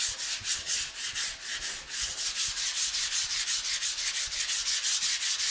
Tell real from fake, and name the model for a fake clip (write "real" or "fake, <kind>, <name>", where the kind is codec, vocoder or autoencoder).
real